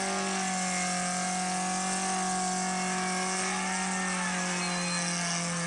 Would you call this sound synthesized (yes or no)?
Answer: no